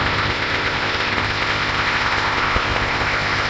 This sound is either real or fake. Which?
fake